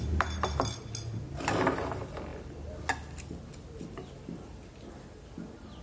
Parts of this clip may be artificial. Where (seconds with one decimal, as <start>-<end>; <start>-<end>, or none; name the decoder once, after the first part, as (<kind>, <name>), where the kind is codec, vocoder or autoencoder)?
none